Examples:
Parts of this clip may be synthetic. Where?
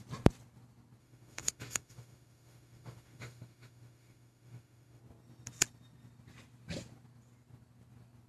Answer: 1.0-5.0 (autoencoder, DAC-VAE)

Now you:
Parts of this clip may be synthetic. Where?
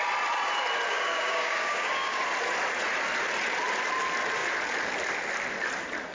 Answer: 0.9-2.2 (codec, DAC)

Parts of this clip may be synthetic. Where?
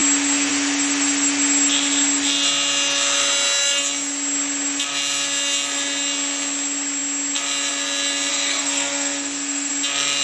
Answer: 8.3-9.7 (codec, SNAC)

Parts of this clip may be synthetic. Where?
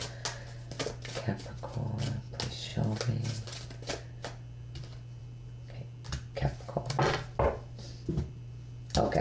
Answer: none